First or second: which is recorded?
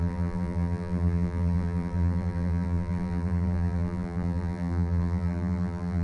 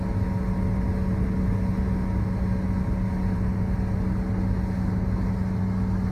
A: second